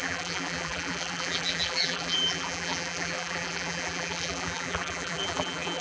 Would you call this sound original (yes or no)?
no